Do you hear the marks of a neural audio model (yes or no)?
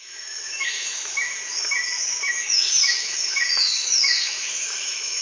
yes